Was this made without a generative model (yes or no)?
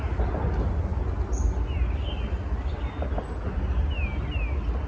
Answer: yes